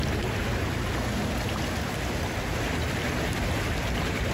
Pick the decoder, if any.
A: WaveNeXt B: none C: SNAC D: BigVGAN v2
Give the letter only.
B